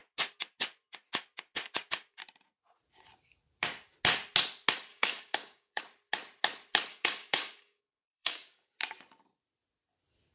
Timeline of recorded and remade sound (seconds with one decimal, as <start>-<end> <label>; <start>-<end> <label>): 0.0-4.9 recorded; 4.9-5.8 remade; 5.8-6.9 recorded; 6.9-8.7 remade; 8.7-10.3 recorded